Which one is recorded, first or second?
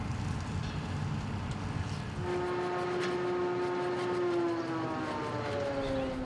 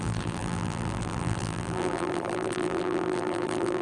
first